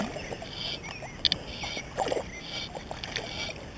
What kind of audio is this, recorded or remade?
recorded